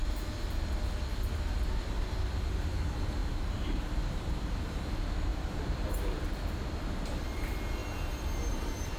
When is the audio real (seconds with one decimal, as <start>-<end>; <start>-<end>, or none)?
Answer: 0.0-3.2; 3.8-5.3; 6.3-9.0